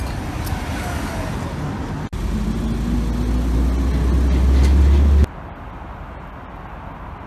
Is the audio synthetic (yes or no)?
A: no